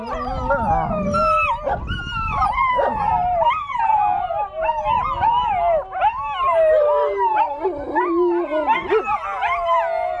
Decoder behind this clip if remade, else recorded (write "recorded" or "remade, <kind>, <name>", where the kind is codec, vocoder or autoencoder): recorded